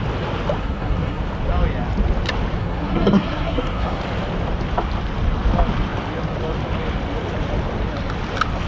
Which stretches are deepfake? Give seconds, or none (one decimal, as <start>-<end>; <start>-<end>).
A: 0.6-1.2; 2.6-4.0